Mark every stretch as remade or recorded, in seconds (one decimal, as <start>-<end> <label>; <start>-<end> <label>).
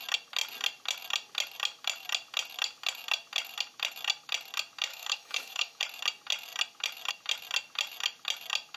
0.0-4.9 recorded; 4.9-5.8 remade; 5.8-8.8 recorded